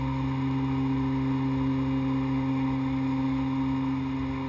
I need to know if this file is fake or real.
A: real